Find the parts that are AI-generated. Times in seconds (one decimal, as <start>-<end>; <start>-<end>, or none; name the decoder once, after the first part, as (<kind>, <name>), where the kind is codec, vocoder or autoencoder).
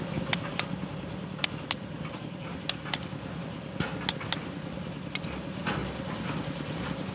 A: none